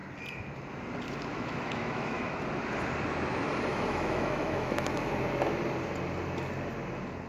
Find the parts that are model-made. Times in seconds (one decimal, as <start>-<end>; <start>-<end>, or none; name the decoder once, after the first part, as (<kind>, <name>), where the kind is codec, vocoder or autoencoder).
1.3-2.3 (autoencoder, DAC-VAE); 3.7-5.1